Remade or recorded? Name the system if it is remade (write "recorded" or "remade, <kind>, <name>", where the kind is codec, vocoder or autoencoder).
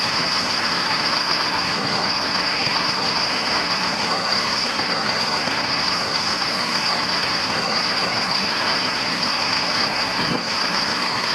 remade, codec, SNAC